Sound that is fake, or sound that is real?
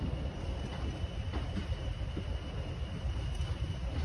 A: real